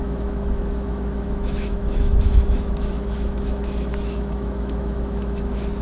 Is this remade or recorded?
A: remade